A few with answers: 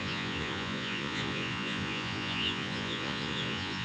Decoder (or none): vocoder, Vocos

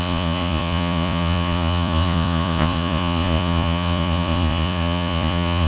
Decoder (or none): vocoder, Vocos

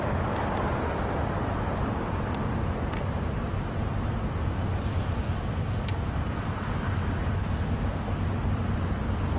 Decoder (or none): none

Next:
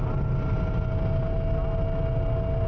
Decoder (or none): none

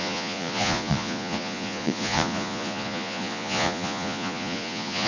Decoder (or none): vocoder, Vocos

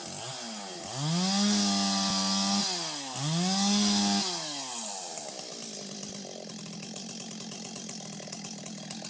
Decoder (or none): none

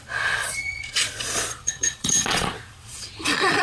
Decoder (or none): vocoder, Vocos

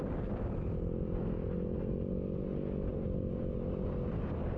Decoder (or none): none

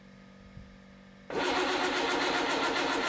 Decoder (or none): none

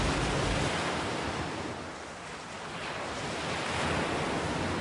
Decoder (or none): none